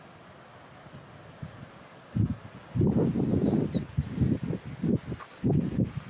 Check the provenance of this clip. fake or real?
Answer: real